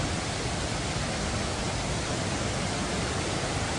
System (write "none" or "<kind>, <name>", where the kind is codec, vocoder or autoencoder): none